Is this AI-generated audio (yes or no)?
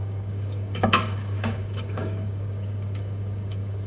yes